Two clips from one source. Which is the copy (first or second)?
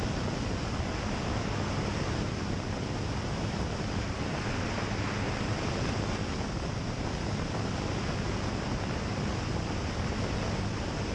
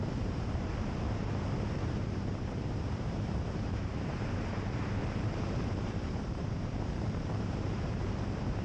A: second